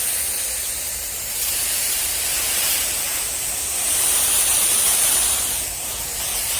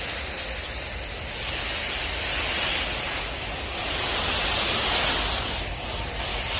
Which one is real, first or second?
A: second